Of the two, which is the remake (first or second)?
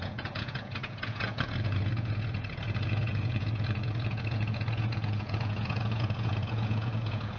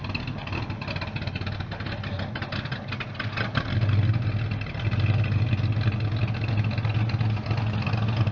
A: first